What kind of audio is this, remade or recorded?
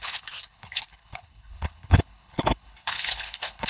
remade